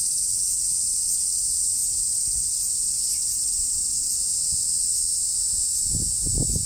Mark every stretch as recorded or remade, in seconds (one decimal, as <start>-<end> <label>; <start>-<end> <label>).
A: 0.0-6.7 recorded